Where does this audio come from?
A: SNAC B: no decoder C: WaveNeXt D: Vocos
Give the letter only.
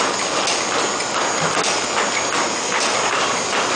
B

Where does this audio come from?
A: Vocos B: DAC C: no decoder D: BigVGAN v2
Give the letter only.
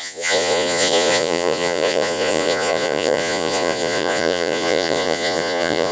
A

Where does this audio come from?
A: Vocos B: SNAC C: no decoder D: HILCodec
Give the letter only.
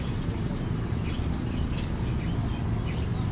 C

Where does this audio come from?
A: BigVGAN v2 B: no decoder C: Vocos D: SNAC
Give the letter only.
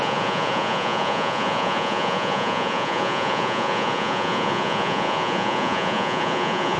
C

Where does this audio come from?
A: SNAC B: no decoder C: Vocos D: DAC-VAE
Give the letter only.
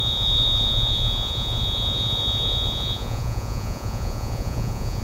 C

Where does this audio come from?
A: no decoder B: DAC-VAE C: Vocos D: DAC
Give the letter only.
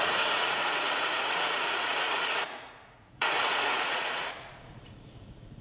C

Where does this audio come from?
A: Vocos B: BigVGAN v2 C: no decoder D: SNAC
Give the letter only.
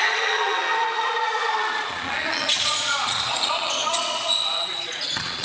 A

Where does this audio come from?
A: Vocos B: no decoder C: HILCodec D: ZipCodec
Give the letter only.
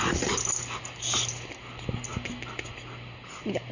B